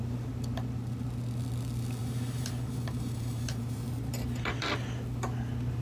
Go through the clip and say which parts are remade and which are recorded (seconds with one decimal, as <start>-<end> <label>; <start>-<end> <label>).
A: 0.0-2.0 recorded; 2.0-4.6 remade; 4.6-5.8 recorded